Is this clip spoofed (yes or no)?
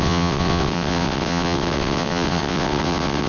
yes